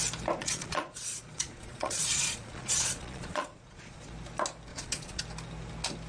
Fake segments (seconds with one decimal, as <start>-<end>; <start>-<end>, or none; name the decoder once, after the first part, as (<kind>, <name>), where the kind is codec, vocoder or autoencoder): 0.4-4.1 (vocoder, Vocos); 4.7-5.2